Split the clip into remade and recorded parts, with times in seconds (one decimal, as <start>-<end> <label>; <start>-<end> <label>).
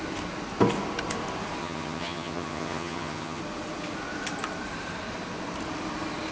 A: 0.0-1.6 recorded; 1.6-3.4 remade; 3.4-6.3 recorded